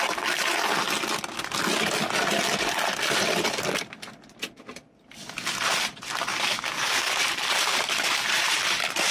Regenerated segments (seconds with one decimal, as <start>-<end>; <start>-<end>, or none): 6.3-7.1